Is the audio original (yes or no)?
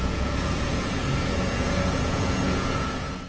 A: no